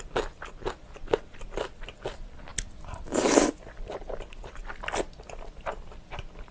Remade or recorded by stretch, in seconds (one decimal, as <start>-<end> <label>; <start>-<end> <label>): 0.0-6.5 recorded